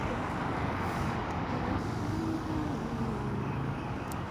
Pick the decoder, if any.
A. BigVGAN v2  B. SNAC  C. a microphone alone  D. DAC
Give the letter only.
D